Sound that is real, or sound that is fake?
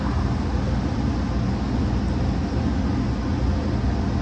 real